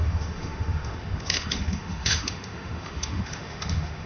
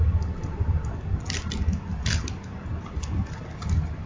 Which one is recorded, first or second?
second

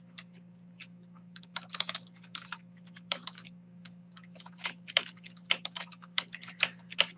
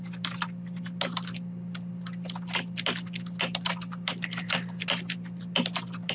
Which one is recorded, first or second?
second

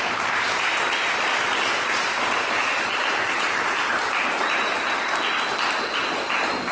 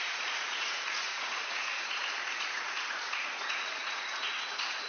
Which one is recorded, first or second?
first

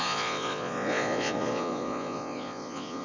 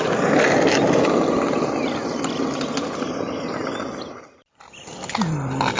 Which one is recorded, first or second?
second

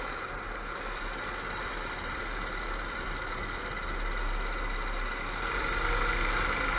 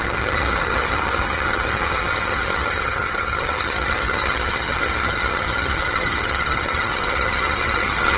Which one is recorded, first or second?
first